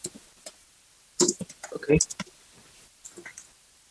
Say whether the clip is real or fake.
real